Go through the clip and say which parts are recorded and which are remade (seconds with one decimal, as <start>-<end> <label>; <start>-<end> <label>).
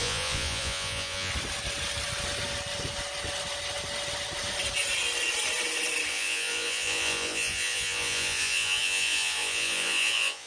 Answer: 0.0-1.3 remade; 1.3-6.1 recorded; 6.1-10.5 remade